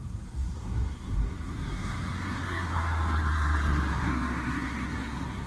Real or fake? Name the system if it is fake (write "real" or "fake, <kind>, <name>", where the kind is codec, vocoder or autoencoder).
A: fake, codec, SNAC